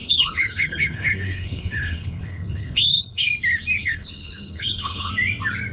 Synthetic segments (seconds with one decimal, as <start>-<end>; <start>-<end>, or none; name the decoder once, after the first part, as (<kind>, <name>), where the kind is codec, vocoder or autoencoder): 0.0-3.3 (codec, HILCodec); 3.8-5.1